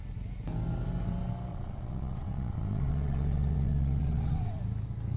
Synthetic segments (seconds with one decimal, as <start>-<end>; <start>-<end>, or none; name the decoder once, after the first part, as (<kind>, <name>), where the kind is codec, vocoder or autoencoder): 1.5-4.6 (vocoder, WaveNeXt)